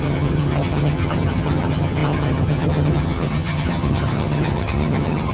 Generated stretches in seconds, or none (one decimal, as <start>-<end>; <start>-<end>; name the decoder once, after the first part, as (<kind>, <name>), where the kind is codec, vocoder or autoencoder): 0.0-5.3 (vocoder, HiFi-GAN)